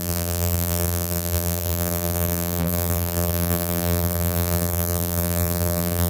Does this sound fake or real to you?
fake